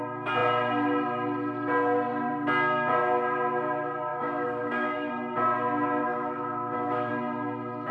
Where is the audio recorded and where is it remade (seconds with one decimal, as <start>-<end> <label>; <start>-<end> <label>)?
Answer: 0.0-4.1 recorded; 4.1-5.1 remade; 5.1-6.0 recorded; 6.0-7.1 remade; 7.1-7.9 recorded